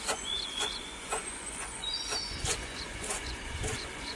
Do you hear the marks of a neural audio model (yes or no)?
yes